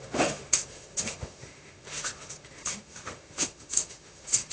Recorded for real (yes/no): no